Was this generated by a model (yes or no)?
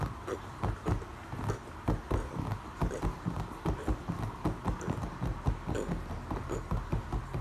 no